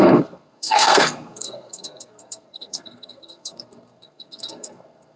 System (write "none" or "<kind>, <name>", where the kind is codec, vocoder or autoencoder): codec, SNAC